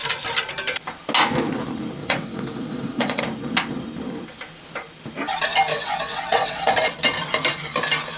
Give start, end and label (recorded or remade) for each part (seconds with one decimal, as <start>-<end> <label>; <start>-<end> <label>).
0.0-2.0 recorded; 2.0-3.2 remade; 3.2-5.7 recorded; 5.7-6.7 remade; 6.7-8.2 recorded